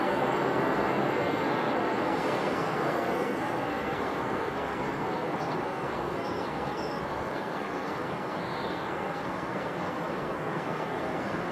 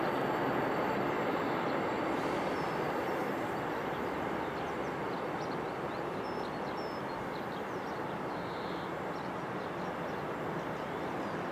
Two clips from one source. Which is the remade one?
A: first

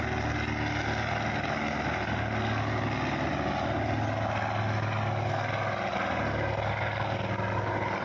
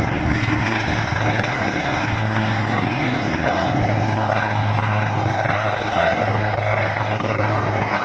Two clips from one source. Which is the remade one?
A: second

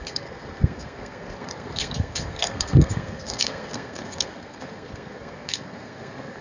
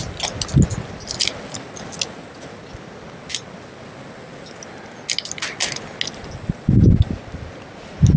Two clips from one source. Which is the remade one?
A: first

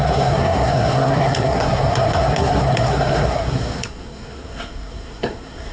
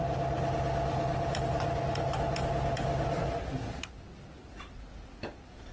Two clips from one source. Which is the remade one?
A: first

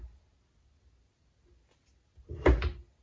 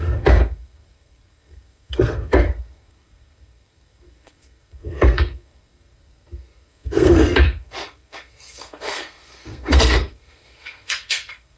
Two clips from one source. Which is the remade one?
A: second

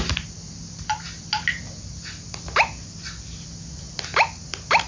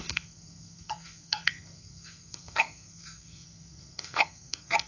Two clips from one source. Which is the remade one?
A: second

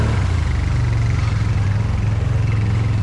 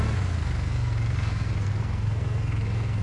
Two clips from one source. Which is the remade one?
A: second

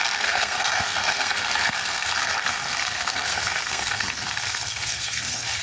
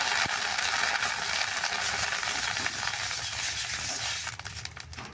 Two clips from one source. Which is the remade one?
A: first